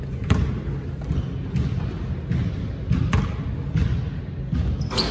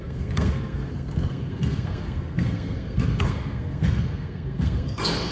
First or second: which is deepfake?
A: second